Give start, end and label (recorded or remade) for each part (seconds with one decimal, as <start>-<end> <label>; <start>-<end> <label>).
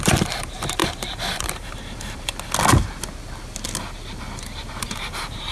0.0-2.3 remade; 2.3-4.8 recorded; 4.8-5.5 remade